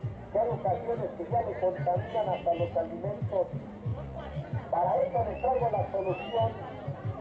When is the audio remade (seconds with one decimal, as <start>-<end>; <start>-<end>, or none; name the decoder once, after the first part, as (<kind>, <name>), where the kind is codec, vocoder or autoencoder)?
3.9-5.6 (vocoder, Vocos)